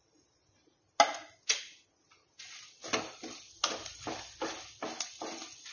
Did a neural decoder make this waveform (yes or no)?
no